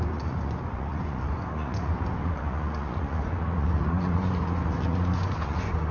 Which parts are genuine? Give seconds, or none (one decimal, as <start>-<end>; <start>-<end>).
none